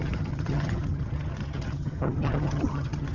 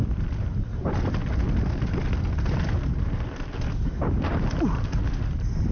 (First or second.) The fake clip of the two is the first